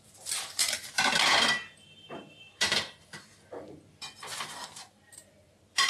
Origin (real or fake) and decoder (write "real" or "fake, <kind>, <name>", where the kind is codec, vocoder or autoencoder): fake, vocoder, BigVGAN v2